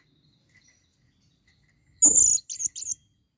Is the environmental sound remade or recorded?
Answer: recorded